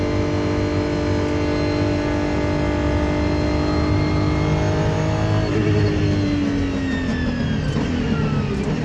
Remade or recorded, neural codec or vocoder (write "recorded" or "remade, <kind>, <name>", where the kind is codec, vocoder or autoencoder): recorded